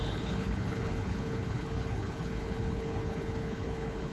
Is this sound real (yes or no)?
no